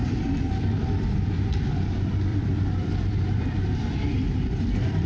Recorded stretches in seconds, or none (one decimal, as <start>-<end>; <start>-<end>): 1.8-2.3